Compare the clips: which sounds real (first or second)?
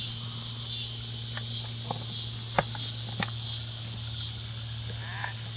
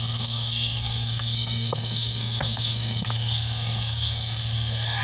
first